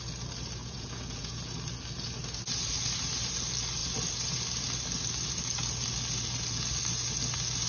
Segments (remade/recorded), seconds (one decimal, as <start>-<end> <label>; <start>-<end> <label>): 0.0-0.6 recorded; 0.6-1.4 remade; 1.4-7.7 recorded

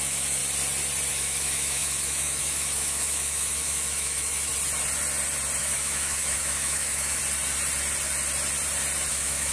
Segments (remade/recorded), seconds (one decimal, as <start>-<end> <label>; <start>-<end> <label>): 0.0-0.4 remade; 0.4-1.1 recorded; 1.1-4.5 remade; 4.5-5.6 recorded; 5.6-7.2 remade; 7.2-9.1 recorded; 9.1-9.5 remade

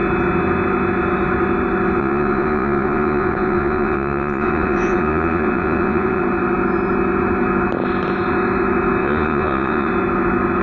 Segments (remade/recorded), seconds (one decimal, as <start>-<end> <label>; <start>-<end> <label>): 0.0-2.0 recorded; 2.0-6.2 remade; 6.2-9.0 recorded; 9.0-9.9 remade; 9.9-10.6 recorded

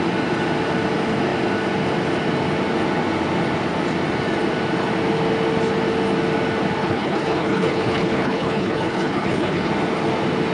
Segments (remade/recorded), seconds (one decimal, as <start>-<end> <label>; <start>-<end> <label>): 0.0-6.8 recorded; 6.8-9.7 remade; 9.7-10.5 recorded

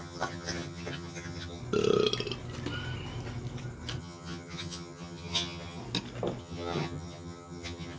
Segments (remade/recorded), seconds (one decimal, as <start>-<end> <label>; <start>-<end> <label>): 0.0-1.6 remade; 1.6-4.0 recorded; 4.0-5.8 remade; 5.8-6.4 recorded; 6.4-8.0 remade